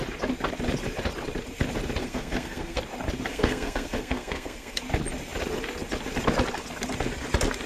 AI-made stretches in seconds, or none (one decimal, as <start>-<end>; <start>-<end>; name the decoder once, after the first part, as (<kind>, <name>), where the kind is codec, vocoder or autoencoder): 2.0-2.8 (codec, SNAC); 3.3-4.8